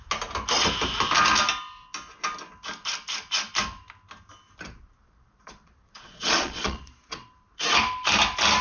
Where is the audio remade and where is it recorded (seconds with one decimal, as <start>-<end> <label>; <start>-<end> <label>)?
0.0-5.0 recorded; 5.0-7.3 remade; 7.3-8.6 recorded